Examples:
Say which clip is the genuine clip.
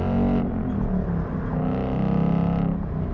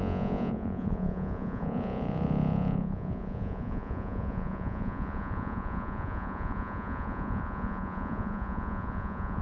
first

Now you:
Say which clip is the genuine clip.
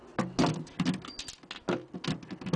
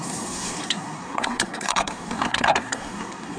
first